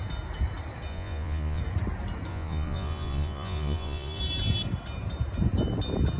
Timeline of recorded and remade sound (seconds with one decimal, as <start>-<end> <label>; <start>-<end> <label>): 0.0-0.9 recorded; 0.9-1.6 remade; 1.6-2.3 recorded; 2.3-4.2 remade; 4.2-6.2 recorded